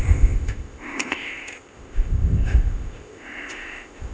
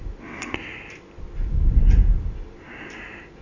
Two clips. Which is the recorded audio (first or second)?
second